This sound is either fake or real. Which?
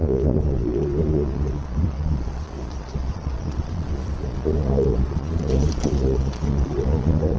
fake